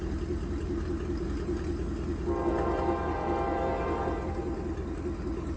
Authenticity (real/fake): real